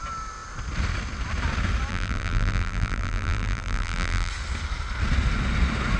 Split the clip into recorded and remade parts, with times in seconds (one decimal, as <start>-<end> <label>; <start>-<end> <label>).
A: 0.0-1.9 recorded; 1.9-4.3 remade; 4.3-6.0 recorded